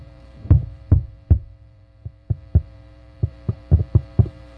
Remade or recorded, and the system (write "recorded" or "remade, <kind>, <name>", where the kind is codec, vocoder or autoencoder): remade, vocoder, BigVGAN v2